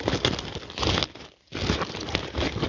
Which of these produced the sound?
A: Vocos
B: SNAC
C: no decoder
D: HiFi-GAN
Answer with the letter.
C